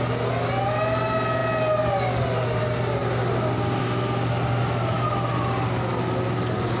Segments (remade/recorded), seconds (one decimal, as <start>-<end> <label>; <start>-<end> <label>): 0.0-6.8 recorded